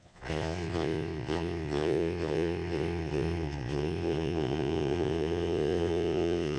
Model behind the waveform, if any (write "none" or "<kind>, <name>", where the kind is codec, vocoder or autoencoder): vocoder, Vocos